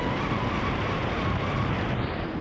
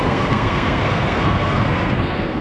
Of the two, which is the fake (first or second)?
second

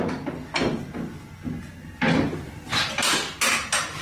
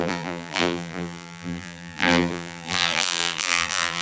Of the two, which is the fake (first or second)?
second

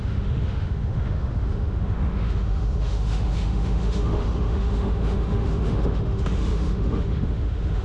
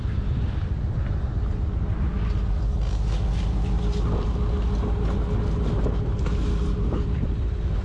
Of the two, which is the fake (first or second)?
first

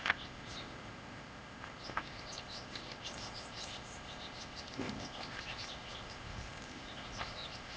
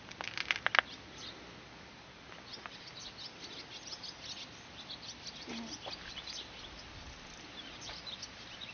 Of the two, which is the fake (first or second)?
first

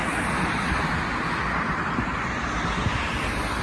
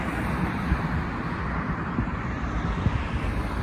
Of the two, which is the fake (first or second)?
second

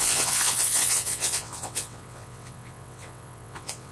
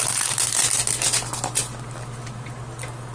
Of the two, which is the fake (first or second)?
first